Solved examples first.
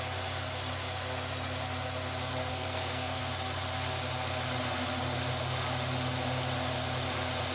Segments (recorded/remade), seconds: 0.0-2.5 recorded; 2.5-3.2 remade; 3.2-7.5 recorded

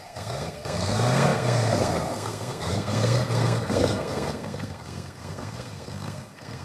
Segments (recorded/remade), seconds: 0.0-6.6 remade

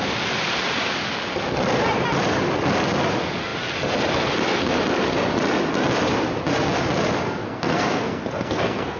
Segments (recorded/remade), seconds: 0.0-7.4 recorded; 7.4-9.0 remade

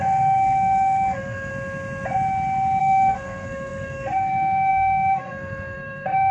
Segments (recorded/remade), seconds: 0.0-1.5 remade; 1.5-2.8 recorded; 2.8-6.3 remade

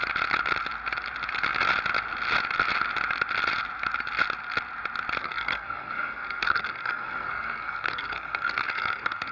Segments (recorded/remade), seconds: 0.0-5.2 recorded; 5.2-9.3 remade